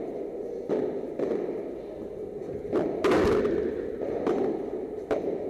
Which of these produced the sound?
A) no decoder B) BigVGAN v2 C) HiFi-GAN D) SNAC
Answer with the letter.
A